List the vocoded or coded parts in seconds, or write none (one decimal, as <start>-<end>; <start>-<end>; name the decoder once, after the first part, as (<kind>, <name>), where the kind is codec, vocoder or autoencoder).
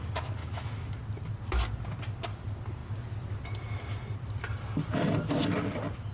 0.4-0.9 (autoencoder, DAC-VAE)